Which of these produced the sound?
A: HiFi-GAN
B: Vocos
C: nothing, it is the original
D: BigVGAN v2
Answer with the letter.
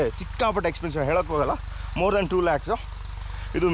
C